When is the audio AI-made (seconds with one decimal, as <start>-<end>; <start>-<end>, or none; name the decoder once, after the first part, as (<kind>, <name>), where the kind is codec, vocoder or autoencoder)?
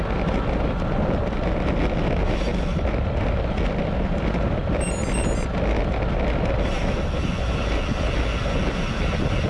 none